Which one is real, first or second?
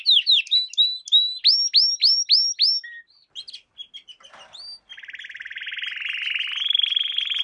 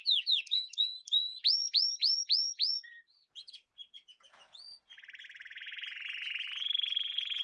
first